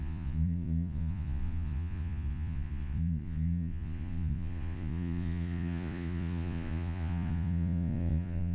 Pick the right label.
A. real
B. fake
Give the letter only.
B